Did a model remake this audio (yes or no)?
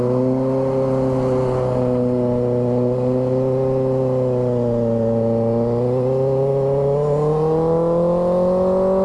no